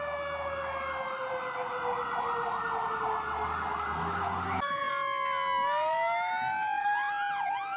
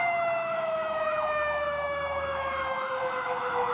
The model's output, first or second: second